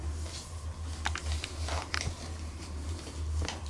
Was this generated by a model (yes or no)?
no